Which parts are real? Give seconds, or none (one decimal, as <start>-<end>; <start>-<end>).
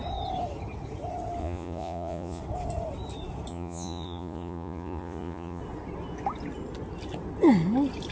0.0-1.4; 2.4-3.5; 5.6-8.1